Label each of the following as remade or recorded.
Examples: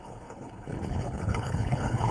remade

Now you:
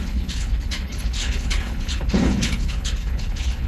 remade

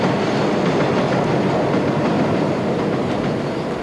recorded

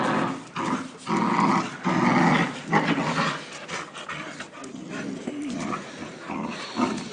recorded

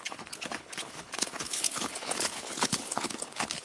remade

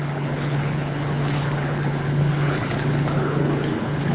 remade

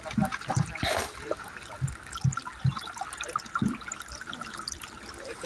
recorded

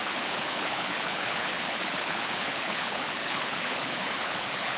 remade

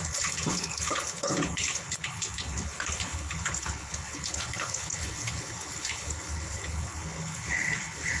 remade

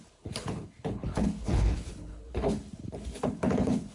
remade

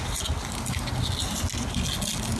recorded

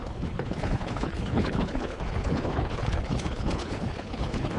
remade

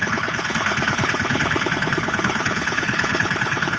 remade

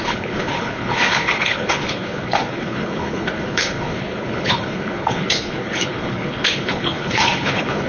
remade